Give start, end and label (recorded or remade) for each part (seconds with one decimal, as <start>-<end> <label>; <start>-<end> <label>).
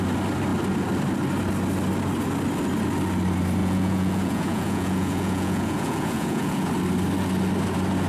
0.0-3.6 recorded; 3.6-6.7 remade; 6.7-8.1 recorded